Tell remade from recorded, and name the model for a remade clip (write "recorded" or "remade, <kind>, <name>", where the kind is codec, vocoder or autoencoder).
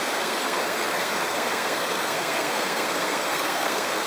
remade, codec, SNAC